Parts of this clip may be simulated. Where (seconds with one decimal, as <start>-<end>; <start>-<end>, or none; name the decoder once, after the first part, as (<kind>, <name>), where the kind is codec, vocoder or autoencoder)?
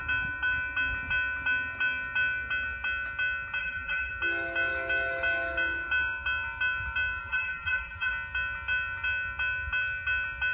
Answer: 3.6-4.1 (vocoder, BigVGAN v2); 7.2-8.1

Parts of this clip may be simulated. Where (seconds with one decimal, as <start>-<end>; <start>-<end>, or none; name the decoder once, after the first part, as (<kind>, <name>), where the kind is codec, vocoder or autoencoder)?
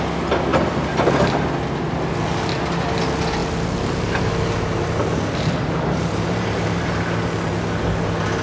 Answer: 3.4-6.9 (vocoder, BigVGAN v2)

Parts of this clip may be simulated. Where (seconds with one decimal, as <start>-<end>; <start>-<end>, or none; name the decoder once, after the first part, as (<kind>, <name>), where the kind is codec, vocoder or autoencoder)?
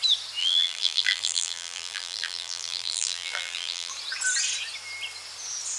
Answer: 0.4-3.9 (vocoder, BigVGAN v2)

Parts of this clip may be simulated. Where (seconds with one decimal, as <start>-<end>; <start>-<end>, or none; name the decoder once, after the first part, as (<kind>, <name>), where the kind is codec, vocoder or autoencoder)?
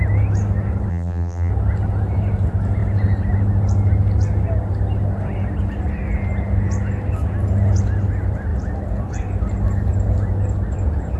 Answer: 0.9-1.5 (vocoder, BigVGAN v2)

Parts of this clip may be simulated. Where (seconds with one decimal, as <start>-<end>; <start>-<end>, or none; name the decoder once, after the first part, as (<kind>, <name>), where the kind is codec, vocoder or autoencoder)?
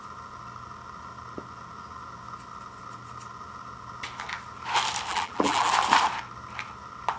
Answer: 5.1-5.7 (vocoder, BigVGAN v2)